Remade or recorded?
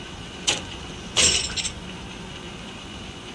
remade